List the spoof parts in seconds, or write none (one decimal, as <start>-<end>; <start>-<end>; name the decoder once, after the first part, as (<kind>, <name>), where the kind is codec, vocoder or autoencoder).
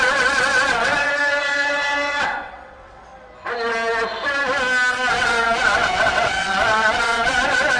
0.0-3.1 (vocoder, WaveNeXt); 4.9-7.8